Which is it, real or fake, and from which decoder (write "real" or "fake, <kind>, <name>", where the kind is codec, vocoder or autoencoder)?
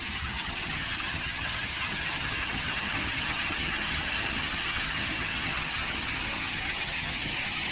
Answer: fake, vocoder, HiFi-GAN